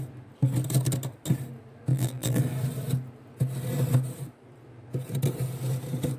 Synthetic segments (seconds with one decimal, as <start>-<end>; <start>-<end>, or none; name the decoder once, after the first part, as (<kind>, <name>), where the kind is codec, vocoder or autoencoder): 1.9-2.4 (vocoder, BigVGAN v2)